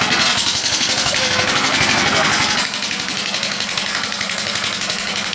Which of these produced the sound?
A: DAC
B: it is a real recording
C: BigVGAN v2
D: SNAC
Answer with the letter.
D